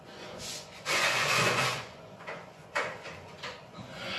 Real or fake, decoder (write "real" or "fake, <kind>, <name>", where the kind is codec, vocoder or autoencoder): fake, vocoder, Vocos